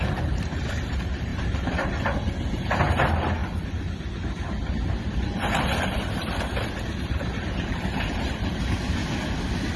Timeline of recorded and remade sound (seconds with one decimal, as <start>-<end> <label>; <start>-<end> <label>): 0.0-3.4 remade; 3.4-7.0 recorded; 7.0-9.0 remade; 9.0-9.8 recorded